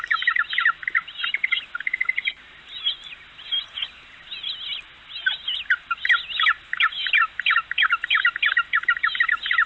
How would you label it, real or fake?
real